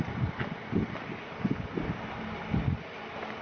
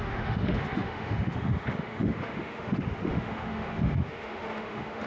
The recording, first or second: first